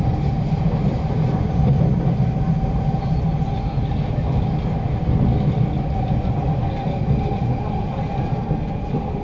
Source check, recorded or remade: recorded